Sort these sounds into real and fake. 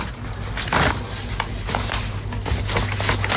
real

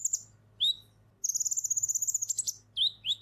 real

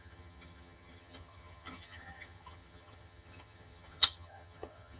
fake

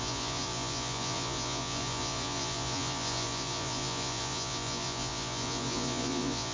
fake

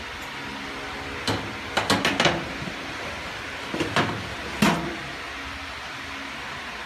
real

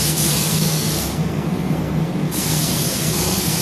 fake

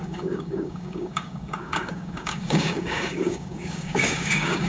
fake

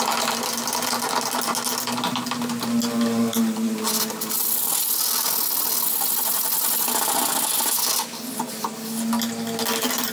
real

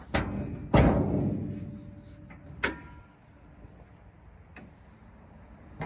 real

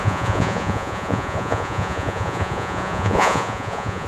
fake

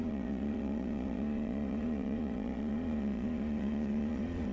fake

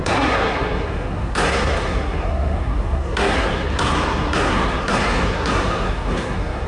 fake